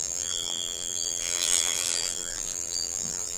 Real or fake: fake